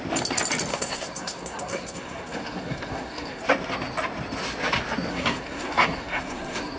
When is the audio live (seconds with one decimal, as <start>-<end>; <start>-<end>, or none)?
0.0-0.7; 3.4-5.1